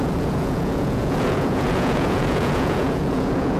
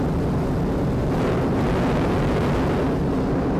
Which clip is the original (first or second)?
second